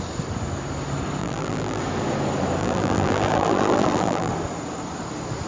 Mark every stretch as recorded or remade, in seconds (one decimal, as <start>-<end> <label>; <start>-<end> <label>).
0.0-1.2 recorded; 1.2-1.8 remade; 1.8-2.6 recorded; 2.6-4.3 remade; 4.3-5.5 recorded